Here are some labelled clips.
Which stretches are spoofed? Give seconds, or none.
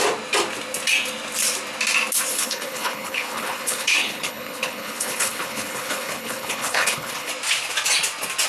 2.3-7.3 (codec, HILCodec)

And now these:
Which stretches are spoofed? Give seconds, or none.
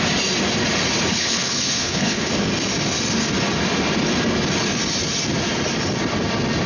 1.1-2.3 (codec, HILCodec)